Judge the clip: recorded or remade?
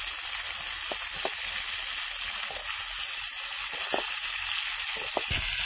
recorded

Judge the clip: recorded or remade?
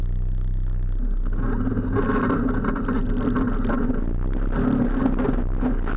recorded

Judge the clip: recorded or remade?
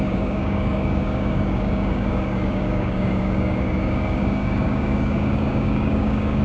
remade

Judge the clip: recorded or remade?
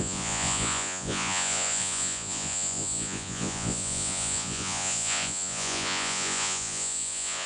remade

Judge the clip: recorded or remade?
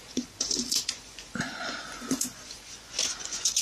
remade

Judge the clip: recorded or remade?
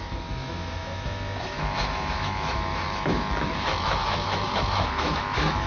remade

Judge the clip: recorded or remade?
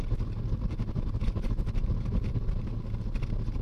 recorded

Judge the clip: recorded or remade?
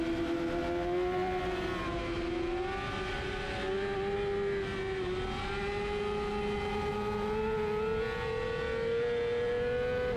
recorded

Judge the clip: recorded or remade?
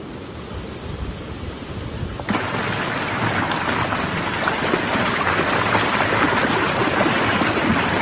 recorded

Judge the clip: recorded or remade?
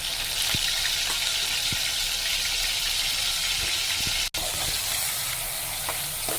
recorded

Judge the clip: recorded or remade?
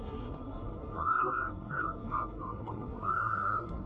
remade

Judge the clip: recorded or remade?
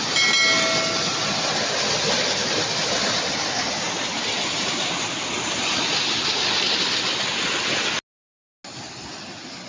recorded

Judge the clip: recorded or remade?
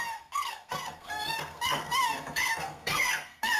remade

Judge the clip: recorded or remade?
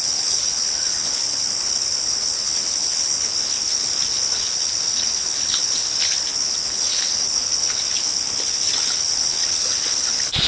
remade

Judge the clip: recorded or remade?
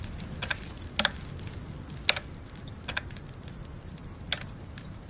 recorded